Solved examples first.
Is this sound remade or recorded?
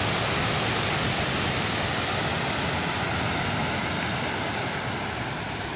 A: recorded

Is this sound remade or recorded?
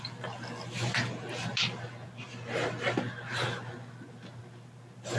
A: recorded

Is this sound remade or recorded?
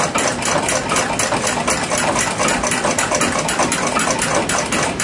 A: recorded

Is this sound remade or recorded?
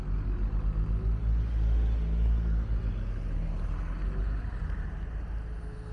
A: recorded